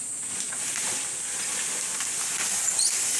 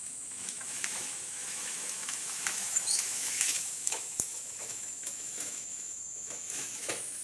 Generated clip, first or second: second